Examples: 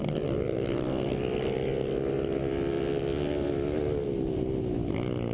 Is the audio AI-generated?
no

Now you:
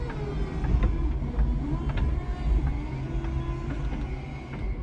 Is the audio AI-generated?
no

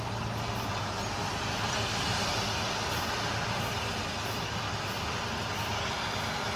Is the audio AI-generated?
no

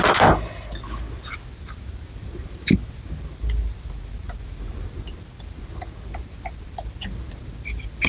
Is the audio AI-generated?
no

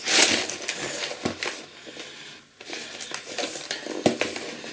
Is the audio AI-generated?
no